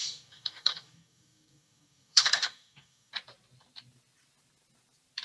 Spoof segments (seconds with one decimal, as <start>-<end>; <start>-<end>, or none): 0.0-3.1